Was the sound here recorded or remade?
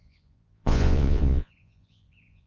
remade